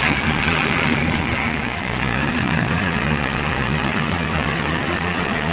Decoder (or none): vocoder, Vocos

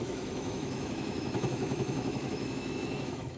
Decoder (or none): autoencoder, DAC-VAE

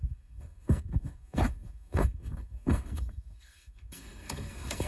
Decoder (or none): codec, SNAC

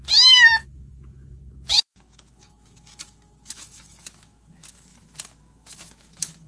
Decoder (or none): autoencoder, DAC-VAE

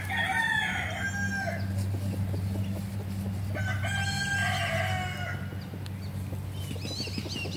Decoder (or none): none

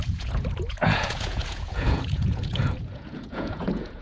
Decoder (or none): vocoder, Vocos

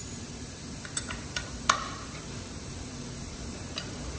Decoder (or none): vocoder, BigVGAN v2